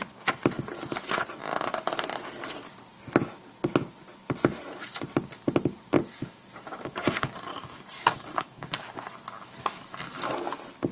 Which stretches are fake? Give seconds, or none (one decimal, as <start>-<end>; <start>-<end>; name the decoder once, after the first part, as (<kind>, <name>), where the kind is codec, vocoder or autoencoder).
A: 6.0-9.1 (codec, DAC)